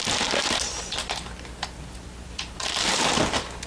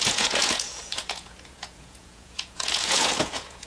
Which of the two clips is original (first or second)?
first